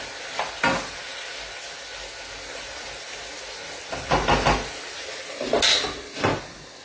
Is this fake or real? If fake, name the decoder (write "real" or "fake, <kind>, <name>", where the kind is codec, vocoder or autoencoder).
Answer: real